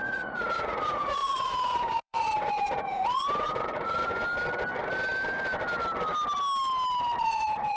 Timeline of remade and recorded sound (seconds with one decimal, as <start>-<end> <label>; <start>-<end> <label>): 0.0-4.1 remade; 4.1-7.2 recorded; 7.2-7.8 remade